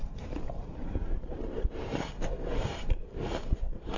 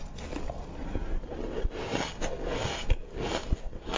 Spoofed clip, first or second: first